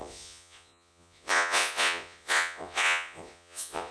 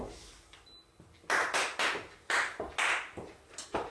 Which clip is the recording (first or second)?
second